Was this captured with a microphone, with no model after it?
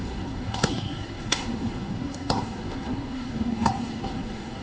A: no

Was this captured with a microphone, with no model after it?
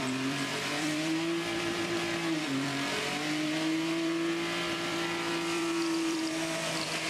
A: no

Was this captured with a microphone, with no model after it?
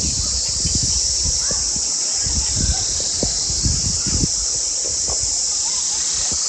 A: yes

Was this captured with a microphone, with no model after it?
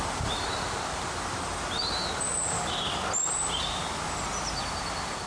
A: yes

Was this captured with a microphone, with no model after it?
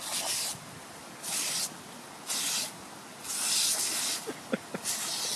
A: yes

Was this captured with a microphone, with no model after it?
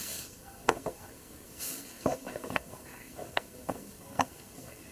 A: no